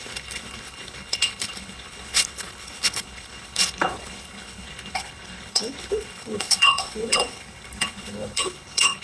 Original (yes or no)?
no